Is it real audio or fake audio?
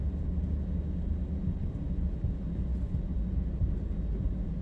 real